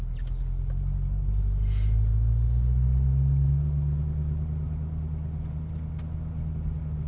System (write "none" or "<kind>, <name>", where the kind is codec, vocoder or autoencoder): none